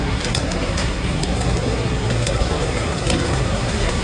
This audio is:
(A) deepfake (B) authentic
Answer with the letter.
A